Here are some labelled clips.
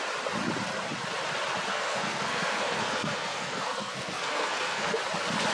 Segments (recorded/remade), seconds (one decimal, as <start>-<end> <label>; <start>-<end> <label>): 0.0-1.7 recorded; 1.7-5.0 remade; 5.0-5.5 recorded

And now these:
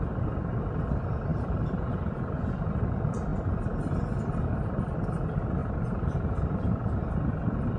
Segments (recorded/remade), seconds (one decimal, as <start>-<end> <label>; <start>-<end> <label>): 0.0-1.3 recorded; 1.3-1.9 remade; 1.9-5.6 recorded; 5.6-7.0 remade; 7.0-7.8 recorded

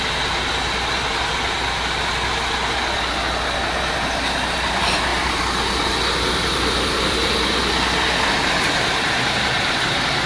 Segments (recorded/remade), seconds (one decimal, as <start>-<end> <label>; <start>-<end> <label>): 0.0-10.3 recorded

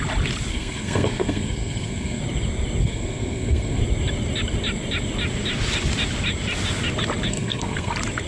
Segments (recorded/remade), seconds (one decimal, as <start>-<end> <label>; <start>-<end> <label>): 0.0-0.5 recorded; 0.5-2.2 remade; 2.2-2.8 recorded; 2.8-3.8 remade; 3.8-7.3 recorded; 7.3-7.9 remade; 7.9-8.3 recorded

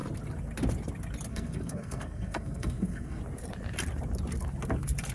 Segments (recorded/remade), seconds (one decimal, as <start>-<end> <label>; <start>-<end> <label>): 0.0-1.3 recorded; 1.3-3.2 remade; 3.2-5.1 recorded